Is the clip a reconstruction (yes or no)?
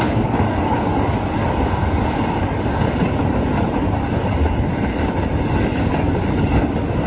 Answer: yes